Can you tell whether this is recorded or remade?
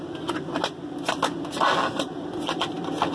recorded